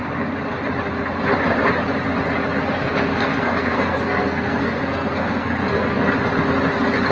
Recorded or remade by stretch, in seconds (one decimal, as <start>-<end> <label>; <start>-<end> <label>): 0.0-2.8 recorded; 2.8-6.1 remade; 6.1-7.1 recorded